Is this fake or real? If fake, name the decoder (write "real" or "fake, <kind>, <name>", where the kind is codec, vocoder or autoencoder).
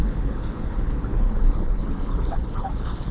fake, codec, HILCodec